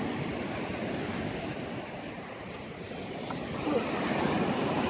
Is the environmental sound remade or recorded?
recorded